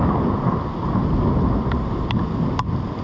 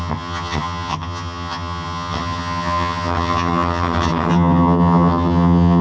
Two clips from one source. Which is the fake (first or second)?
second